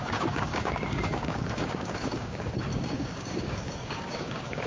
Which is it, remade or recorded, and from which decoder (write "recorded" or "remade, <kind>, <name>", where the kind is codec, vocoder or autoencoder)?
remade, codec, DAC